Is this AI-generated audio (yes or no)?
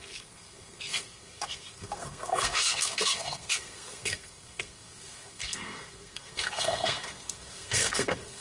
yes